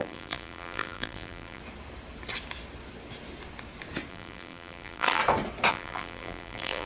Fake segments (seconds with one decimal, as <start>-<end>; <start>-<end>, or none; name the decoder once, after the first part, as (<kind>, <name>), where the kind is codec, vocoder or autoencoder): 0.0-1.6 (vocoder, BigVGAN v2); 4.1-5.2; 5.7-6.9